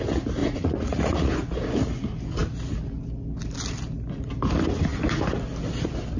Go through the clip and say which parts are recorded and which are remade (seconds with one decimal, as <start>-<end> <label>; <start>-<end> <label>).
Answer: 0.0-0.4 recorded; 0.4-1.3 remade; 1.3-6.2 recorded